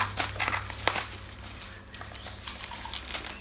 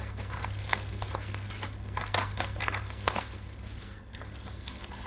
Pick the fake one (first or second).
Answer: second